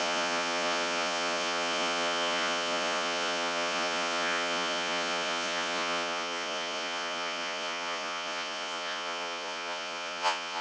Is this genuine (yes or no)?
no